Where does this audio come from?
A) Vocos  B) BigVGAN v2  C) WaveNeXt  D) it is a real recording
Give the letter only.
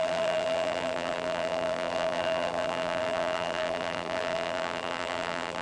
B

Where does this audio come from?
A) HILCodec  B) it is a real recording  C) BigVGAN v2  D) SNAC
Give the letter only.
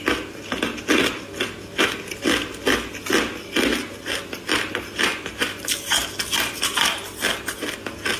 B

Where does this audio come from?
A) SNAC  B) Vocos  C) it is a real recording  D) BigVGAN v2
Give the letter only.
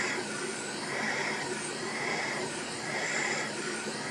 C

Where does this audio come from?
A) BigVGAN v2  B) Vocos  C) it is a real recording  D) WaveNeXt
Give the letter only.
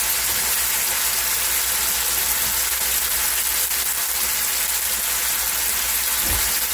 C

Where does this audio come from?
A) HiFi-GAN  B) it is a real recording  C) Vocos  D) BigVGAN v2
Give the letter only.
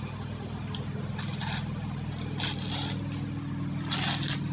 B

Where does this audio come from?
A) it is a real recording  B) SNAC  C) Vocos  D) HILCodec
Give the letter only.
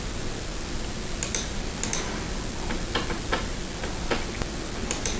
A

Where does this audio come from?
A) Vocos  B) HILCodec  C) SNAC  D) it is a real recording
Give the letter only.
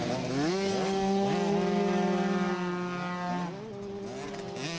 D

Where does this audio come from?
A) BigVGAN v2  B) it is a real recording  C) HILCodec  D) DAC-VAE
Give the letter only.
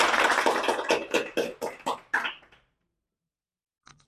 B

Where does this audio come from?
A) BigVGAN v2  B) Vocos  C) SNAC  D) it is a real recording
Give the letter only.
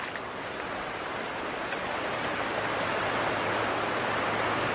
D